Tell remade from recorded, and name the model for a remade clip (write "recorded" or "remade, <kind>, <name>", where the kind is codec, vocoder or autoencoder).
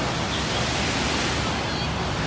recorded